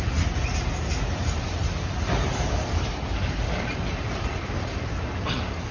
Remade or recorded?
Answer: remade